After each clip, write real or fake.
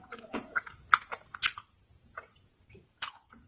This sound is fake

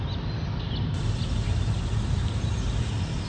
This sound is real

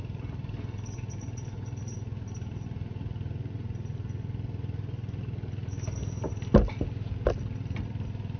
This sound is real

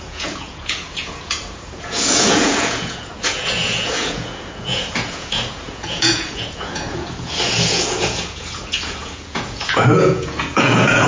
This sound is fake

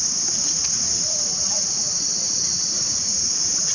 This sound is fake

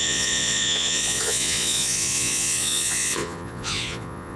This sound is fake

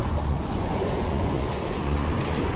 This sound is fake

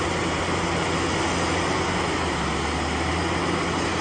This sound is real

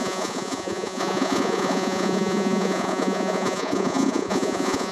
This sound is fake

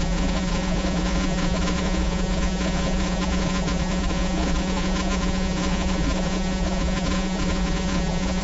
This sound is fake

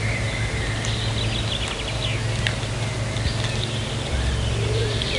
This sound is real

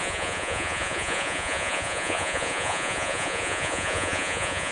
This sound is fake